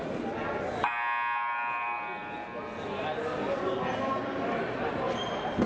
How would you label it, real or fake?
real